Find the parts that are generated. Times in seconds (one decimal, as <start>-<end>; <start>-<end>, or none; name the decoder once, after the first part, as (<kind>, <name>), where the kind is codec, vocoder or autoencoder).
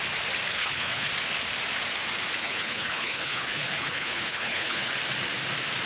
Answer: 0.5-1.1 (codec, HILCodec); 2.4-4.9